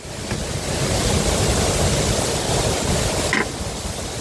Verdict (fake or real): real